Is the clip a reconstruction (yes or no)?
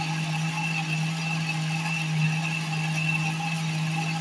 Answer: no